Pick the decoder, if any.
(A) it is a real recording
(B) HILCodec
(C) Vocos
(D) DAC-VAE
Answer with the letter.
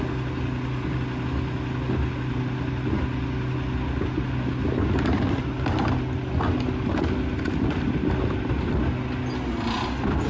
A